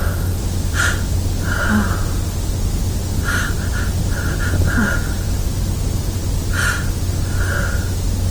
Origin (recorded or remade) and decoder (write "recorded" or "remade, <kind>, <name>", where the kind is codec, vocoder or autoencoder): recorded